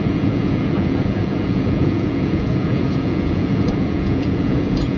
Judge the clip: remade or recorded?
remade